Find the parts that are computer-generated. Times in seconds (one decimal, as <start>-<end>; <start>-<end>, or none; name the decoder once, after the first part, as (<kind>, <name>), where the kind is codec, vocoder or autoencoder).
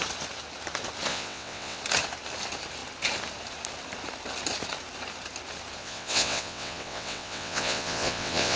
1.1-1.8 (vocoder, WaveNeXt); 5.8-8.6